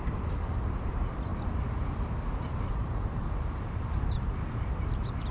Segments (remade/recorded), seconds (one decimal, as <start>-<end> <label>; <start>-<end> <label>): 0.0-1.3 remade; 1.3-2.7 recorded; 2.7-5.3 remade